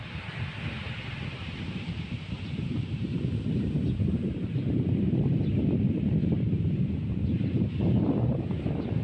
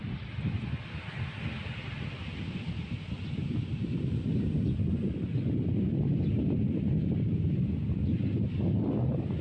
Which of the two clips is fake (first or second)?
first